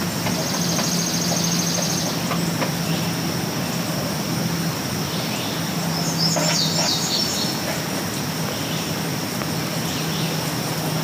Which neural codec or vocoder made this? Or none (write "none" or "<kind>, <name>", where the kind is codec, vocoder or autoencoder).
none